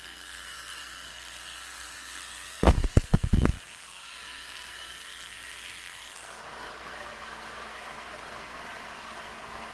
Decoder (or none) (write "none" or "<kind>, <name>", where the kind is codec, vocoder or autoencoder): codec, SNAC